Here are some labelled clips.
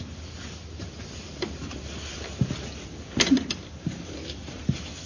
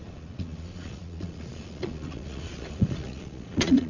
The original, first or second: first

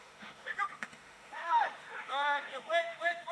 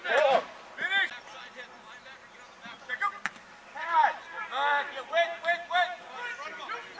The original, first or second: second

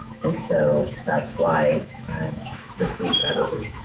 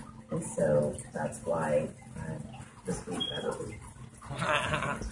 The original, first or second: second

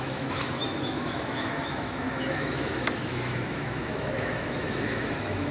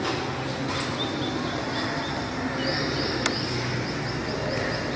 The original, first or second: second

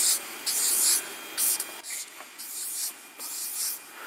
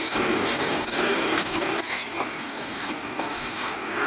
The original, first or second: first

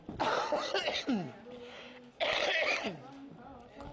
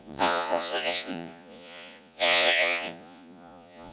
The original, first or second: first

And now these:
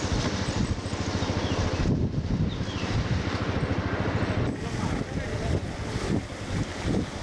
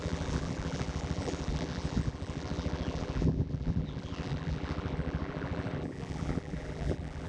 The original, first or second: first